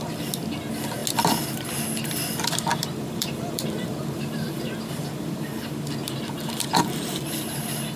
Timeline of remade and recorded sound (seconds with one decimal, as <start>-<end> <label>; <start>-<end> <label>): 0.0-2.7 recorded; 2.7-5.6 remade; 5.6-6.0 recorded; 6.0-7.2 remade; 7.2-8.0 recorded